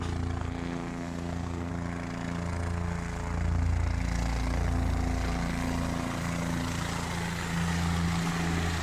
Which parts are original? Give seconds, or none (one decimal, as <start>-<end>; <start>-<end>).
0.0-0.4; 1.7-8.8